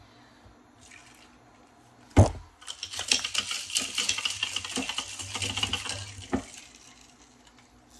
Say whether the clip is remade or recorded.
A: recorded